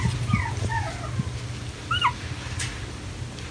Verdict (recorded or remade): recorded